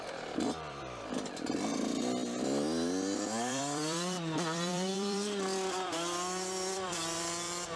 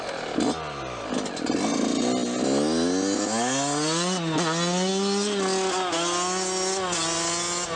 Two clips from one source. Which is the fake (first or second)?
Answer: first